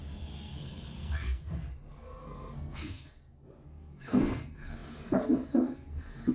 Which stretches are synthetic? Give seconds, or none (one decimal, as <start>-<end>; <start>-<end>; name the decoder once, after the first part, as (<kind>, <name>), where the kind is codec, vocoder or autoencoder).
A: 0.0-6.3 (codec, SNAC)

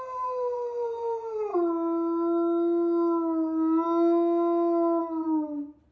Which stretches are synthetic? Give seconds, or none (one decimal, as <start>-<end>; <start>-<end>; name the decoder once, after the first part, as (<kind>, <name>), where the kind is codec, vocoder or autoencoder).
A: 0.0-1.5 (vocoder, BigVGAN v2); 5.0-5.9

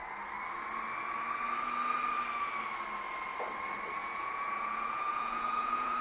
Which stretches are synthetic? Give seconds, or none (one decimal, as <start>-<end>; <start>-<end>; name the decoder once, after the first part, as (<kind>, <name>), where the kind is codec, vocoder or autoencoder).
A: 4.0-6.0 (vocoder, Vocos)

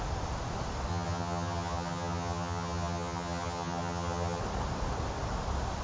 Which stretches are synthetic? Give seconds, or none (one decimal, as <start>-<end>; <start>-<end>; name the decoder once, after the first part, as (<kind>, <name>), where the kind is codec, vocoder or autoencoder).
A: 0.9-4.4 (vocoder, HiFi-GAN)

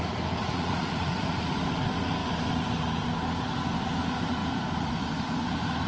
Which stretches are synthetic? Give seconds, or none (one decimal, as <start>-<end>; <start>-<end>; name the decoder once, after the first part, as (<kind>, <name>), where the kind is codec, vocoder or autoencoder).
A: 0.4-1.6 (vocoder, Vocos)

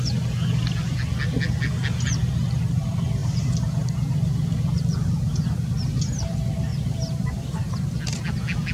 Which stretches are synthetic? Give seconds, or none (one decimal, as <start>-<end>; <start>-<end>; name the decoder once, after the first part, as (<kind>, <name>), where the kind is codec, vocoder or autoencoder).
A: 3.2-3.7 (vocoder, BigVGAN v2); 6.7-7.7